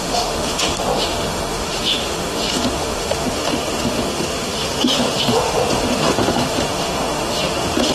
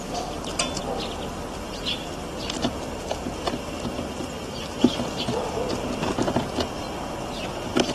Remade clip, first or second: first